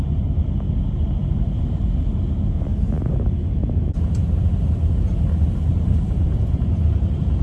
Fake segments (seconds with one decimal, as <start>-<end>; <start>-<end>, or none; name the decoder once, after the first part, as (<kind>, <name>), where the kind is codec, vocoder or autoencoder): 1.2-1.8 (vocoder, BigVGAN v2); 5.7-7.4